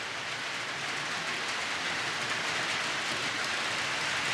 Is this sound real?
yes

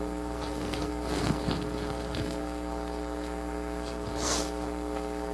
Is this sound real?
no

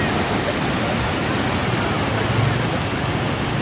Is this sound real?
yes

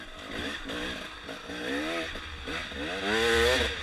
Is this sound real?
yes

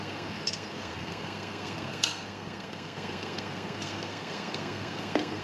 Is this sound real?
no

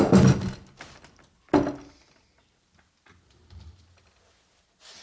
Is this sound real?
yes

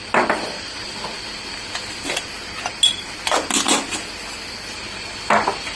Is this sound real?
yes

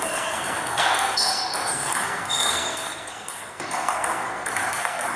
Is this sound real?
no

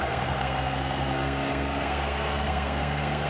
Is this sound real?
no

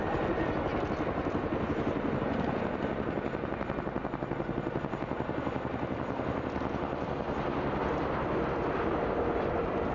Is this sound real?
yes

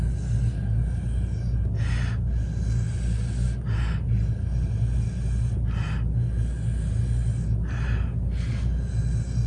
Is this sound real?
yes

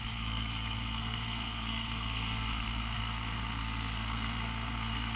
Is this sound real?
no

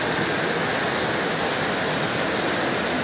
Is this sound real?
yes